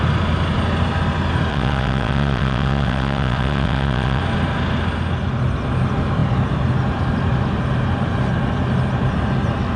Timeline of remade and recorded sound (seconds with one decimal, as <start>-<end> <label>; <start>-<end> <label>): 0.0-1.5 recorded; 1.5-4.2 remade; 4.2-9.8 recorded